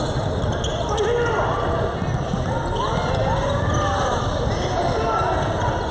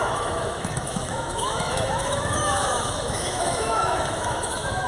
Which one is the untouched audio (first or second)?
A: first